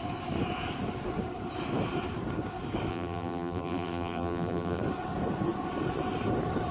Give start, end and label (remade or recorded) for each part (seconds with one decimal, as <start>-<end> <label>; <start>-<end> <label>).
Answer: 0.0-2.9 recorded; 2.9-4.8 remade; 4.8-6.7 recorded